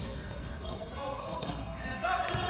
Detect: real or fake fake